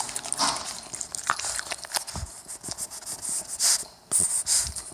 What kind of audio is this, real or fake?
real